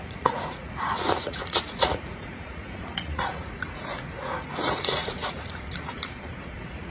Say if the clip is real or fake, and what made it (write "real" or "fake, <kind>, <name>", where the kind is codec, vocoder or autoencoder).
fake, vocoder, Vocos